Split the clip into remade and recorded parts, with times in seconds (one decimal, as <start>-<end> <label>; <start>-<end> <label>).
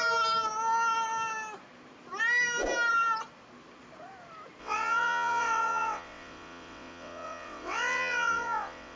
0.0-4.6 recorded; 4.6-9.0 remade